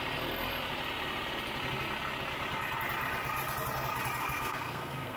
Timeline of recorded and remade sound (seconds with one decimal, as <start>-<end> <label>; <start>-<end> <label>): 0.0-4.2 recorded; 4.2-5.2 remade